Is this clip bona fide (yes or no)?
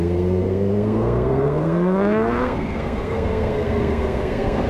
no